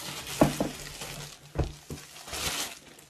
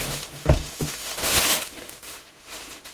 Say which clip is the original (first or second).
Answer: first